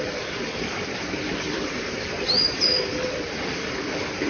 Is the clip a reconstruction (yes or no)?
no